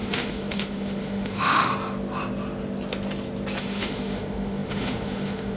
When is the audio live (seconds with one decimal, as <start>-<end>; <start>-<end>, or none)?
1.7-3.6